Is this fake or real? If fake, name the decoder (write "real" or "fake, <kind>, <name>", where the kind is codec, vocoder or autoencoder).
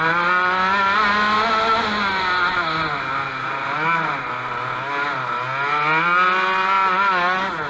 real